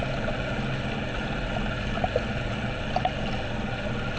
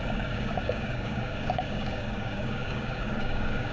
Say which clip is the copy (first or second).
second